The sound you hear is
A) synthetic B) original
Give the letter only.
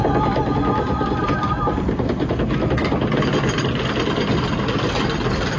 B